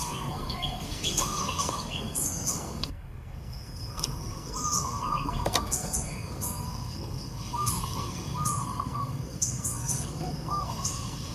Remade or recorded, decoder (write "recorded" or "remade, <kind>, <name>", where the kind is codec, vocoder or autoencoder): remade, codec, SNAC